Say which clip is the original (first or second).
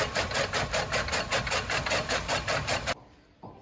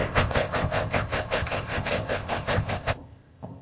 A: first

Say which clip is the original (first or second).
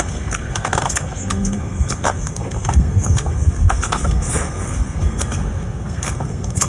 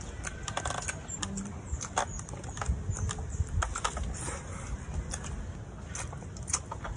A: second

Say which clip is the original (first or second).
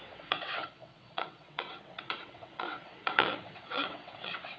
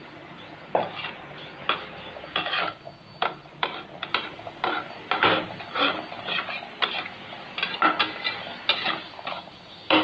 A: second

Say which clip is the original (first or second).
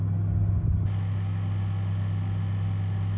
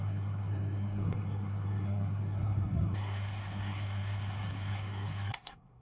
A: first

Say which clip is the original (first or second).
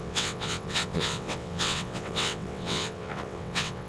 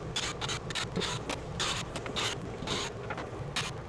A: second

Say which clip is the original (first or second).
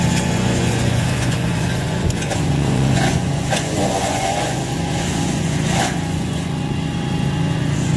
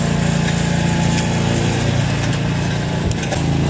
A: second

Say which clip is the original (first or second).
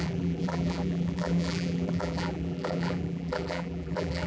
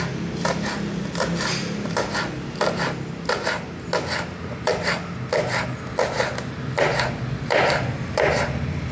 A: second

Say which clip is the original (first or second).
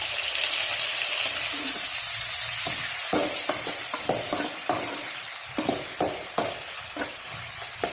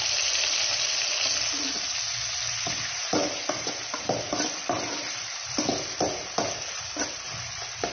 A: second